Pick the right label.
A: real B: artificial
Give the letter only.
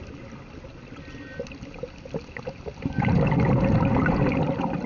A